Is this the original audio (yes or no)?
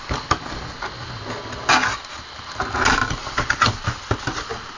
yes